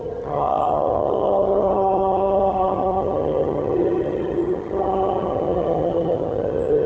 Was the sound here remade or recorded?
remade